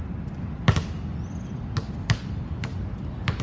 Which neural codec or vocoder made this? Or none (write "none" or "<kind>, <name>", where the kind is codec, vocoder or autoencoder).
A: none